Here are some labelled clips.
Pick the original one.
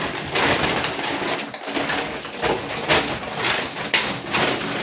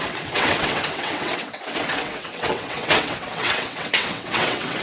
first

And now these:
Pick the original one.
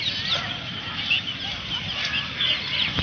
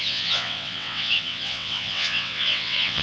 first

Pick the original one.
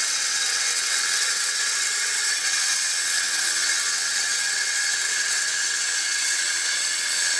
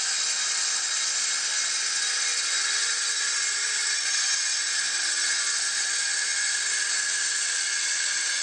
second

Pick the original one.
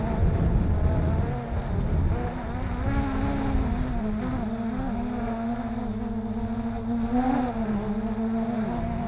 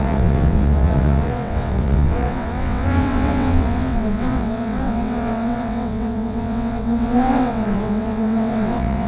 first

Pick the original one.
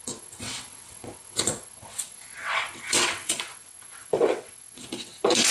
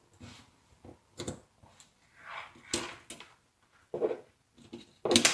second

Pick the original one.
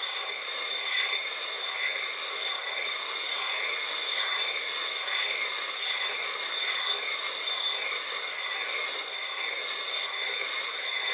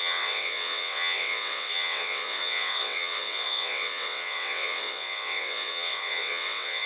first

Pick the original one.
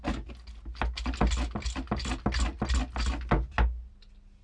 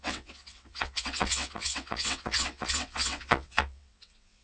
first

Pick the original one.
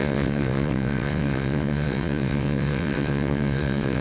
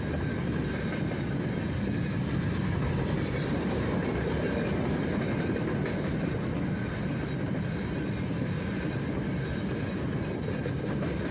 second